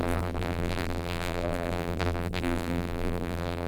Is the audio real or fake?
fake